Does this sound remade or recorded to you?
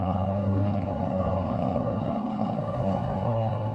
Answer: remade